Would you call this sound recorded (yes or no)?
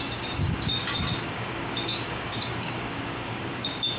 no